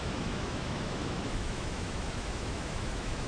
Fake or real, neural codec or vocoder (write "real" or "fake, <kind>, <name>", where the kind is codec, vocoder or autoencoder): fake, autoencoder, DAC-VAE